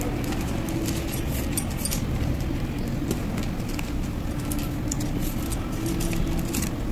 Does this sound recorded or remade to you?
recorded